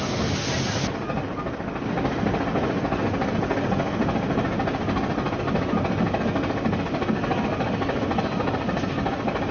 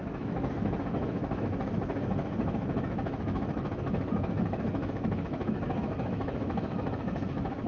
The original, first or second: first